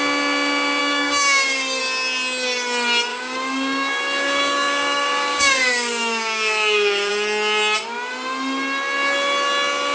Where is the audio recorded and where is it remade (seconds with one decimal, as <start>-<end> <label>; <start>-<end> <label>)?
0.0-0.8 recorded; 0.8-1.8 remade; 1.8-3.1 recorded; 3.1-7.1 remade; 7.1-9.9 recorded